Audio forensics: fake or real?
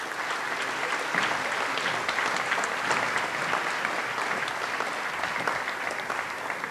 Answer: real